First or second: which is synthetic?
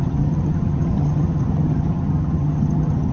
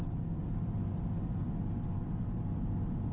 first